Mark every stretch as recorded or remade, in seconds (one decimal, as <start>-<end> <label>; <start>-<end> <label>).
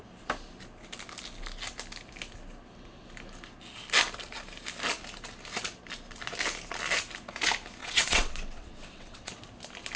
0.0-7.8 recorded; 7.8-9.3 remade; 9.3-10.0 recorded